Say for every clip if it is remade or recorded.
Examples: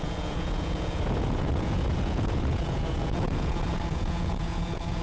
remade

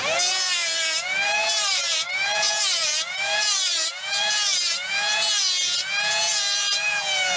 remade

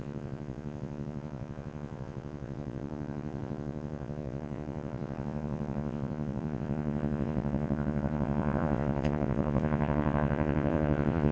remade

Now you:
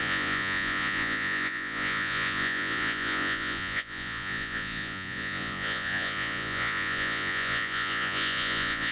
remade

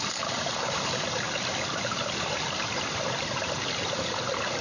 recorded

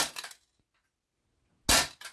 recorded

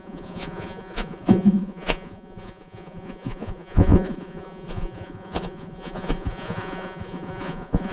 remade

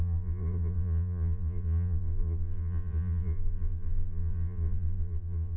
remade